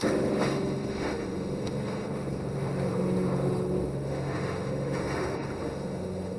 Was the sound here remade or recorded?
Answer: remade